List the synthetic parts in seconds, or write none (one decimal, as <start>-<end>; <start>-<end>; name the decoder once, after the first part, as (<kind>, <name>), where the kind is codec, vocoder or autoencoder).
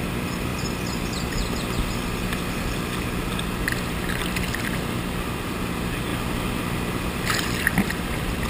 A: none